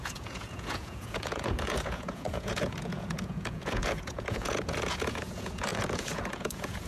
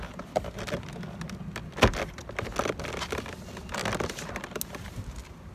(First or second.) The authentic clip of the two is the second